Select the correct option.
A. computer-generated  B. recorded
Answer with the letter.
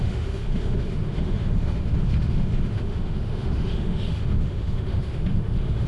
A